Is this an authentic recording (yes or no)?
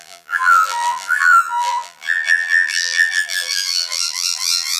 no